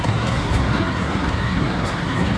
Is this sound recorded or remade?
remade